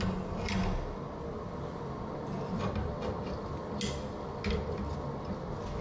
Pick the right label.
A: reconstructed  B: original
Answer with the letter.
B